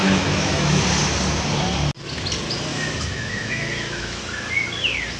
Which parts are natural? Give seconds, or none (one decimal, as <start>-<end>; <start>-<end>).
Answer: 0.8-2.7; 4.2-5.2